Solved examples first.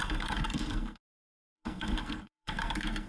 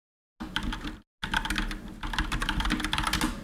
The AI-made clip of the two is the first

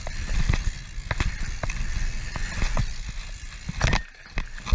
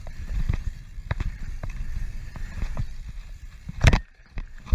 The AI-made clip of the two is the second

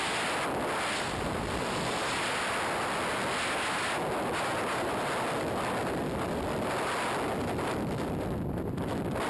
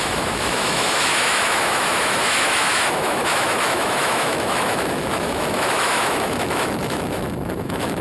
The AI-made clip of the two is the second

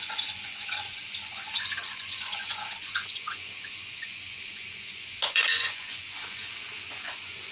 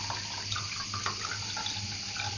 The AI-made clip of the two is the first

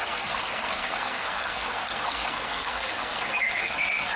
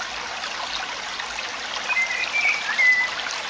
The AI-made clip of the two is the first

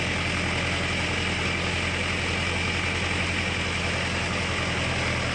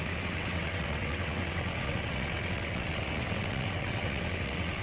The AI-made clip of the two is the second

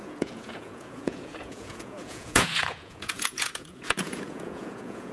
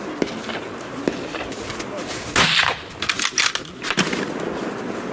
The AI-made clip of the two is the first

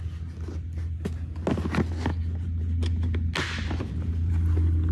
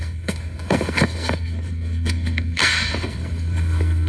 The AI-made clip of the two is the second